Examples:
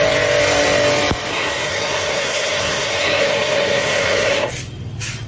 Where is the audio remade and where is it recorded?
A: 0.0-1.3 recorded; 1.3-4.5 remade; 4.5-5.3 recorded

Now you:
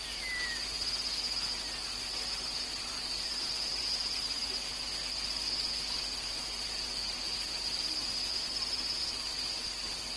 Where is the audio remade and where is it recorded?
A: 0.0-10.2 recorded

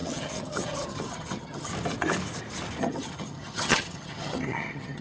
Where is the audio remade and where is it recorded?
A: 0.0-1.7 remade; 1.7-2.8 recorded; 2.8-5.0 remade